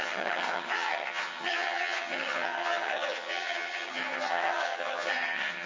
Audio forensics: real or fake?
fake